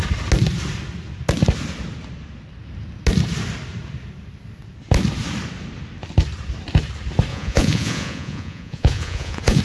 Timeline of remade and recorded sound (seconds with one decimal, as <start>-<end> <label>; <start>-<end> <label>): 0.0-7.3 recorded; 7.3-9.6 remade